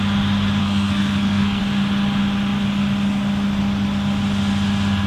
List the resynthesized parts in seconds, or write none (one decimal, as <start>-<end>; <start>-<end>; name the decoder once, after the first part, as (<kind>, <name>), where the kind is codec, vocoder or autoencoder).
0.6-1.6 (codec, SNAC)